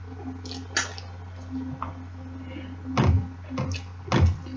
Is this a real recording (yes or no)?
yes